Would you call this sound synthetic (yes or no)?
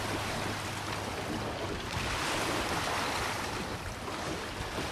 no